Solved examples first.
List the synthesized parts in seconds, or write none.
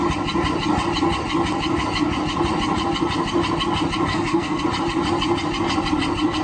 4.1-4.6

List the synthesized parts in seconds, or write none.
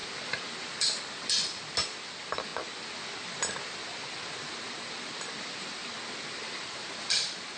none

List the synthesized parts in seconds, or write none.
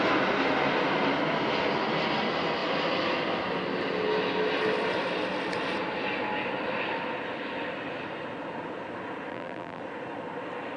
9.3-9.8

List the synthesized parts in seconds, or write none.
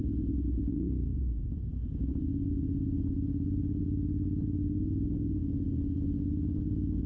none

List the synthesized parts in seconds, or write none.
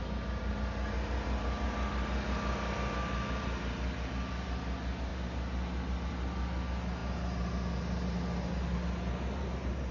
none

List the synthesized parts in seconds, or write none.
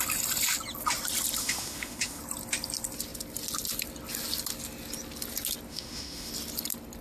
1.4-2.2; 5.7-6.3